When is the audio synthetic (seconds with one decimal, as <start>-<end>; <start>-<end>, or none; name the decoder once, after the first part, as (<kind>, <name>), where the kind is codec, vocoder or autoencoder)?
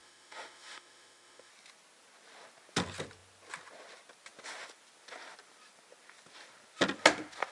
0.0-1.5 (autoencoder, DAC-VAE)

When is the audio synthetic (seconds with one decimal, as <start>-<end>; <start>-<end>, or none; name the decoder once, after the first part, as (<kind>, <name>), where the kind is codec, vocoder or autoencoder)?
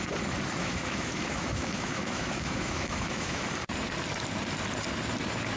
0.6-3.4 (autoencoder, DAC-VAE)